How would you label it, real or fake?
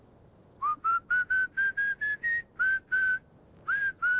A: real